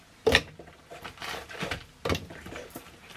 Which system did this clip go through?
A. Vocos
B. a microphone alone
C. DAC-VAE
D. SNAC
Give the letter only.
B